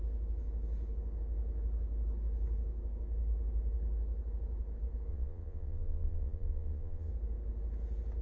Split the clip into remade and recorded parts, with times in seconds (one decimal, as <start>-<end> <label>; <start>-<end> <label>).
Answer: 0.0-5.1 recorded; 5.1-7.1 remade; 7.1-8.2 recorded